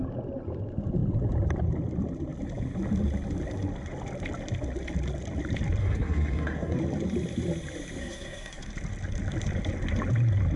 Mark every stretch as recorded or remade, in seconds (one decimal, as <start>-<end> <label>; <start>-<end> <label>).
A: 0.0-5.8 recorded; 5.8-6.8 remade; 6.8-8.0 recorded; 8.0-8.7 remade; 8.7-10.6 recorded